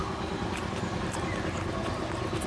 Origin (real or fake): real